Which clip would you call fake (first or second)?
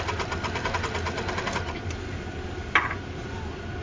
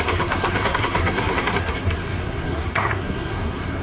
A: second